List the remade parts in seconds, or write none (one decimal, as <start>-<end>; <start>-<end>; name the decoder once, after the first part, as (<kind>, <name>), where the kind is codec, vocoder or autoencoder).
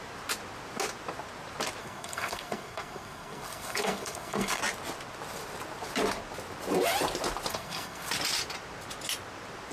1.8-4.6 (codec, SNAC); 7.5-8.1